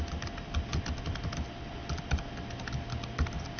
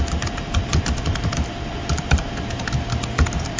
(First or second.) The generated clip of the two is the second